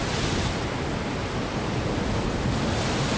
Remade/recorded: remade